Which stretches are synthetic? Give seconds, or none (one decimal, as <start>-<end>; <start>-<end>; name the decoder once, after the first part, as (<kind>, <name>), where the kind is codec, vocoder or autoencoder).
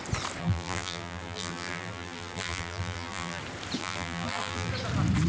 0.4-3.4 (vocoder, BigVGAN v2); 3.8-4.7